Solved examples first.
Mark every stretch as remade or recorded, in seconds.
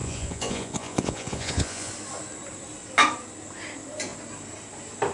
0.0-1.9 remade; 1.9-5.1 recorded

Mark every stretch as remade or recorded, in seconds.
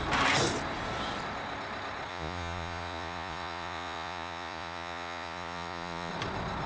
0.0-2.1 recorded; 2.1-6.1 remade; 6.1-6.7 recorded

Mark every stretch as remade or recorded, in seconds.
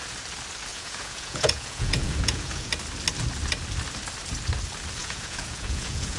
0.0-0.7 recorded; 0.7-2.7 remade; 2.7-5.0 recorded; 5.0-6.2 remade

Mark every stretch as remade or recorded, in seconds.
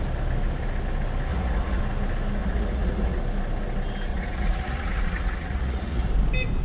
0.0-1.3 recorded; 1.3-1.8 remade; 1.8-2.4 recorded; 2.4-3.2 remade; 3.2-4.1 recorded; 4.1-6.1 remade; 6.1-6.6 recorded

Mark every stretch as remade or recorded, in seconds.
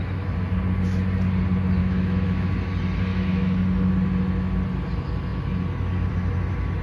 0.0-1.8 recorded; 1.8-2.5 remade; 2.5-3.1 recorded; 3.1-3.6 remade; 3.6-6.8 recorded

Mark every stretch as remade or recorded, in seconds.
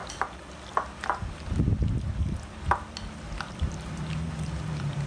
0.0-5.1 recorded